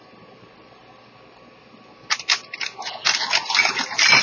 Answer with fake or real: real